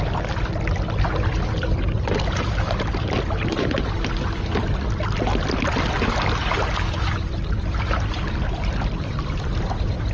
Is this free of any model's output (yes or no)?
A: yes